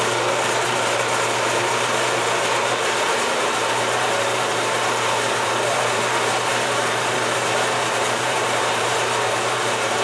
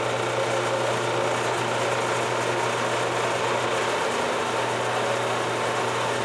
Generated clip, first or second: first